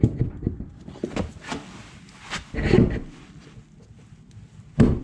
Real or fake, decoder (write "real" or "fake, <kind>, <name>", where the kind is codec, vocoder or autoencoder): real